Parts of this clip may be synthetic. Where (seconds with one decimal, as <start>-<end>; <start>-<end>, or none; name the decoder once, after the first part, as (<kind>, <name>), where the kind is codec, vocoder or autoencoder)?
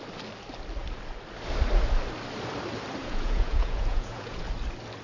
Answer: 3.0-4.4 (vocoder, Vocos)